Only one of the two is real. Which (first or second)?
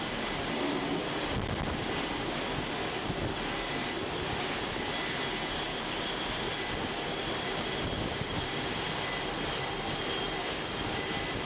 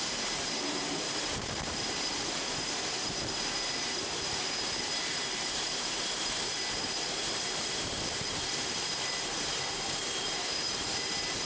first